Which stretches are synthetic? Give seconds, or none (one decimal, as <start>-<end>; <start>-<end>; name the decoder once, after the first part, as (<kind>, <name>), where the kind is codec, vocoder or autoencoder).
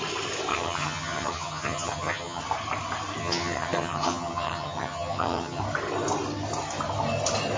0.5-2.4 (vocoder, HiFi-GAN); 3.2-5.6